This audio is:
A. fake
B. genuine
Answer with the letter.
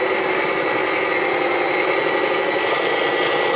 B